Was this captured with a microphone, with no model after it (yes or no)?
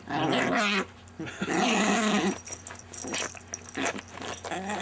yes